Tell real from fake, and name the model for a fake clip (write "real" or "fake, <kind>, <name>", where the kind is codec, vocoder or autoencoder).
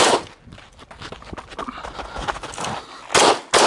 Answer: real